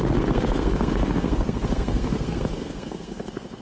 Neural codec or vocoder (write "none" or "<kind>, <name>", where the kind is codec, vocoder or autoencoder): codec, SNAC